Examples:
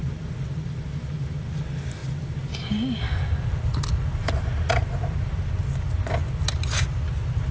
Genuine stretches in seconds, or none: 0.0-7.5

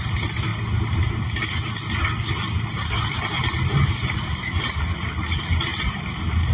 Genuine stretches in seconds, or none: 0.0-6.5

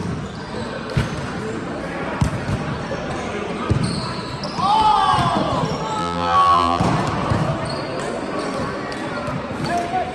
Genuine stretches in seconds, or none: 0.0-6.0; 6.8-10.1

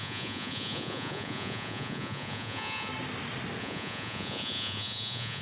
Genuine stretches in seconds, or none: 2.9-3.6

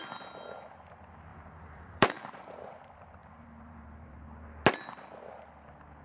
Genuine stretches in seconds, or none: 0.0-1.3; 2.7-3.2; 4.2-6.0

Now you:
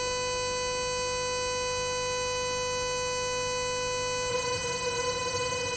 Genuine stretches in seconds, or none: 0.0-4.3

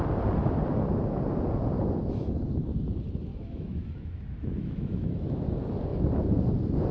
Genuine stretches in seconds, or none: 0.0-3.3; 5.4-6.9

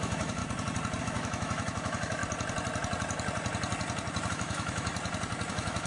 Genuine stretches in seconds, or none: 0.4-1.0; 2.2-4.3; 4.9-5.5